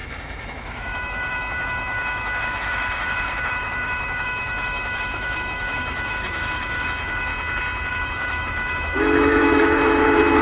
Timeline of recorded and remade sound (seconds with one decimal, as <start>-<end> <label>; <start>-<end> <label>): 0.0-7.3 remade; 7.3-7.9 recorded; 7.9-10.4 remade